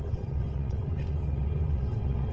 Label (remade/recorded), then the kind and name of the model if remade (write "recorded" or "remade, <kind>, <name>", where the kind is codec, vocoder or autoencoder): remade, vocoder, WaveNeXt